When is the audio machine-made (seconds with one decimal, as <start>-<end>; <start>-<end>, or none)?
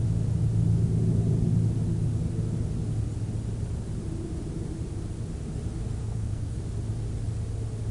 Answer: 6.0-6.6